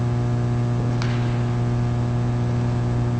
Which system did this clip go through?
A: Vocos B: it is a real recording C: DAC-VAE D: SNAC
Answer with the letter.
B